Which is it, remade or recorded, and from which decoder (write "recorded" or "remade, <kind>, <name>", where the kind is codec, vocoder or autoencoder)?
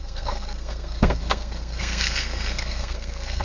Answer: remade, codec, SNAC